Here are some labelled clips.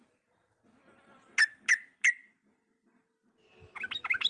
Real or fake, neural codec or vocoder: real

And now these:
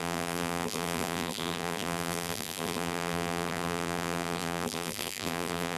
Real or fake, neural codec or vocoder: fake, vocoder, BigVGAN v2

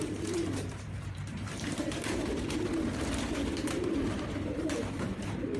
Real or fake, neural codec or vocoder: fake, vocoder, BigVGAN v2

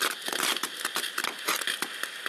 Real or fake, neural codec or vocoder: real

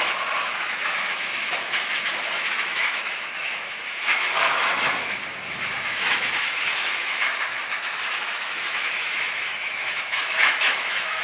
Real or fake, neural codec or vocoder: fake, autoencoder, DAC-VAE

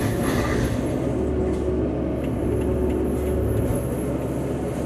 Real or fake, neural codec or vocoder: real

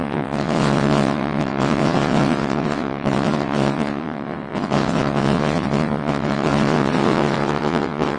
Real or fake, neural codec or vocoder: fake, vocoder, WaveNeXt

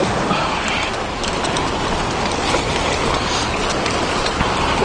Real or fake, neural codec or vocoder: real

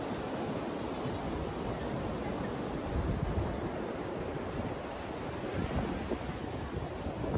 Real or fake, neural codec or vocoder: real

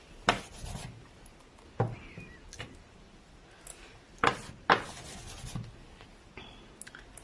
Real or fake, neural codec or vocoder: real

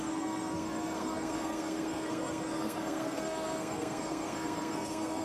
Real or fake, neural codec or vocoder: fake, codec, SNAC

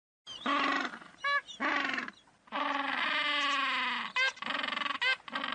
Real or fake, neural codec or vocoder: real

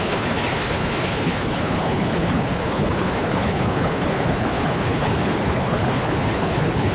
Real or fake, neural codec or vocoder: fake, codec, HILCodec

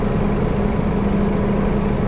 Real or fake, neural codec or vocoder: real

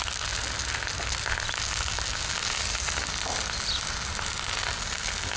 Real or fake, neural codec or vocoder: real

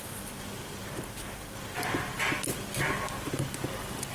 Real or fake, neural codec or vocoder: real